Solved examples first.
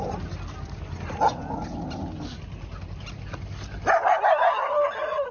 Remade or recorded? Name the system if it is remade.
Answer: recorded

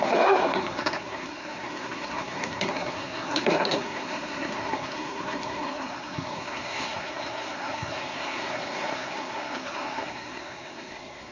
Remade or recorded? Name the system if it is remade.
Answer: remade, codec, SNAC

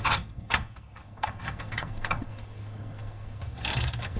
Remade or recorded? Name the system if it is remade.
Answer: remade, codec, SNAC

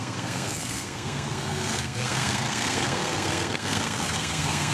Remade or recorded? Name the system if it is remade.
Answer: remade, codec, SNAC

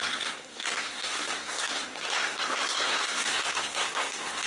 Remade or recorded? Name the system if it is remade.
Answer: remade, codec, SNAC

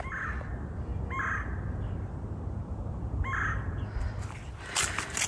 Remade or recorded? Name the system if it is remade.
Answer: recorded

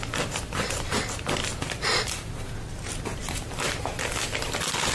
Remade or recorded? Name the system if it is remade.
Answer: recorded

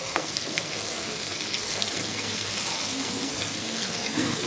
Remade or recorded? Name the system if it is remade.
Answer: remade, codec, SNAC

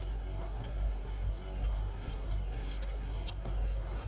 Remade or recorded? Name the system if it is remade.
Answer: remade, codec, SNAC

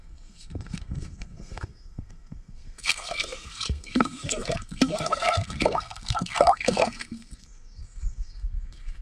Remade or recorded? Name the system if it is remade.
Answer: remade, codec, SNAC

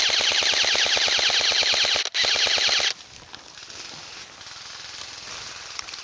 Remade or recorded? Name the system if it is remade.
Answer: recorded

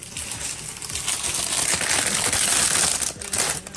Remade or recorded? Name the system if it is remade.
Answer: recorded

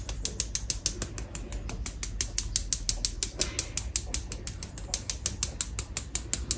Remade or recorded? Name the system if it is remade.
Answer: recorded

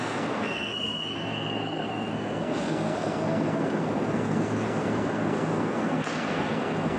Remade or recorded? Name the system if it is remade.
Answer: remade, codec, SNAC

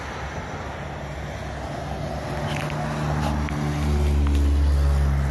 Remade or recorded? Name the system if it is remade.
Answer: recorded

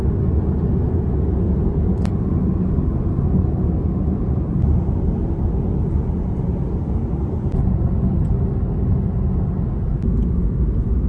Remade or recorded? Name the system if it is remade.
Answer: recorded